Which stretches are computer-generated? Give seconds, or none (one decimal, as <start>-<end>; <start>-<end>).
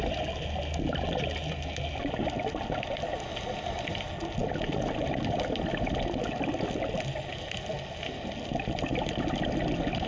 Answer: none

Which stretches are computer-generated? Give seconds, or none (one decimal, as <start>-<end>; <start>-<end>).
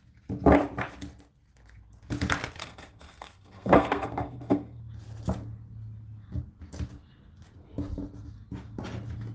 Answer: 2.6-4.8